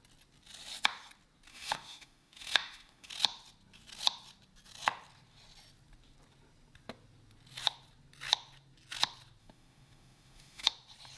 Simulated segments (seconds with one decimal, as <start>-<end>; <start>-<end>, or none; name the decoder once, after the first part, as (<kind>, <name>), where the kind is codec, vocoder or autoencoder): 1.5-3.1 (autoencoder, DAC-VAE); 9.4-10.7